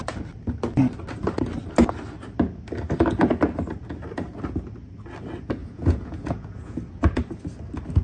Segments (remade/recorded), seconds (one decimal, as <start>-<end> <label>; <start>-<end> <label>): 0.0-5.6 recorded; 5.6-6.9 remade; 6.9-8.0 recorded